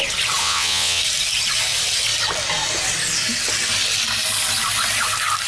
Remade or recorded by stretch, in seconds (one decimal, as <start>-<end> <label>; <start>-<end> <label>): 0.0-0.4 recorded; 0.4-1.0 remade; 1.0-5.5 recorded